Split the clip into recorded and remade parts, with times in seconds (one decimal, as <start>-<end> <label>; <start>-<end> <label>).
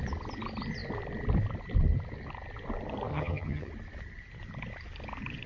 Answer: 0.0-3.1 recorded; 3.1-3.7 remade; 3.7-5.5 recorded